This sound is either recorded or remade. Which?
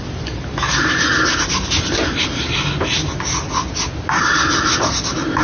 recorded